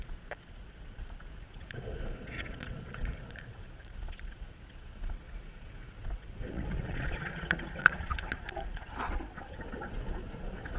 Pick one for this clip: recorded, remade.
remade